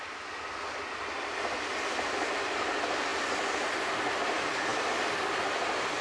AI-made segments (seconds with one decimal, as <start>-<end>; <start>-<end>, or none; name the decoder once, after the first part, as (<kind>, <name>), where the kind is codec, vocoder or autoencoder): none